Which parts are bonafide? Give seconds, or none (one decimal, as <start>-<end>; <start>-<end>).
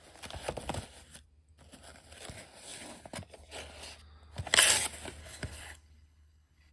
0.0-5.2